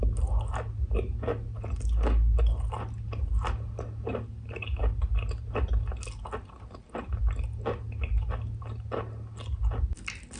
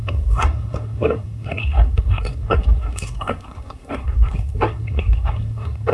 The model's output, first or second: second